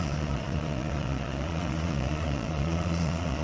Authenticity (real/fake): fake